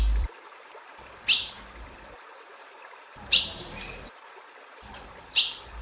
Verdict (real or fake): fake